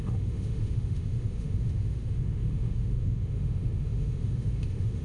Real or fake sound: fake